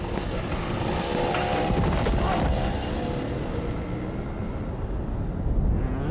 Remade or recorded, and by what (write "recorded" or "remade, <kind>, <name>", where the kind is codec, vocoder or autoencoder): recorded